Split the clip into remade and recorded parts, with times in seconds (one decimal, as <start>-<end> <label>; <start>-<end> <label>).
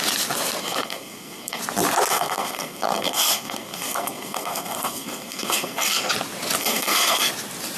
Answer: 0.0-0.6 recorded; 0.6-1.6 remade; 1.6-2.1 recorded; 2.1-6.1 remade; 6.1-6.6 recorded; 6.6-7.3 remade; 7.3-7.8 recorded